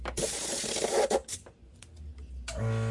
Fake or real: real